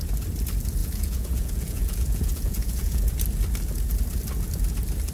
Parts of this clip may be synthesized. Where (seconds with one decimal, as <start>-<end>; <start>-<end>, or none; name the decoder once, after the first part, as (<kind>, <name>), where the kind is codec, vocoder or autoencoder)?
0.8-3.1 (vocoder, Vocos)